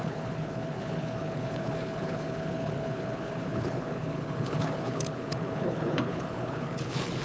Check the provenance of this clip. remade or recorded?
remade